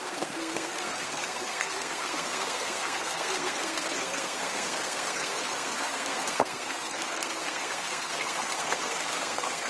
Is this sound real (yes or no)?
no